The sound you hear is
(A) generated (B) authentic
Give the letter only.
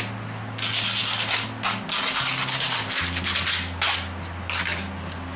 B